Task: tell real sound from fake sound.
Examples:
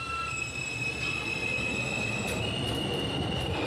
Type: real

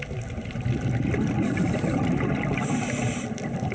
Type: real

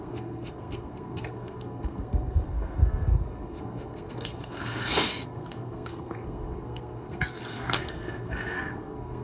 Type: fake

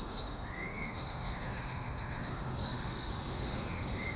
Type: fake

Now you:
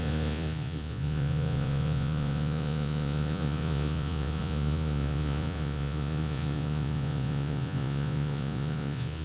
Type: fake